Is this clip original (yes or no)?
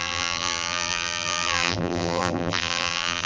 no